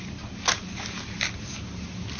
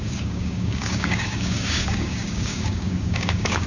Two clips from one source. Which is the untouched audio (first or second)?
first